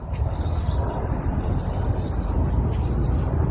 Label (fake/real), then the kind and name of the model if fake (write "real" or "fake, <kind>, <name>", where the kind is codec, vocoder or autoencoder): real